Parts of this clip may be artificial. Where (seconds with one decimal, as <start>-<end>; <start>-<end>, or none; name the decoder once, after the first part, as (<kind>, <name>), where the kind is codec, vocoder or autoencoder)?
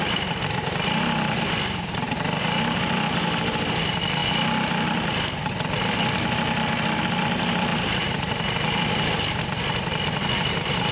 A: none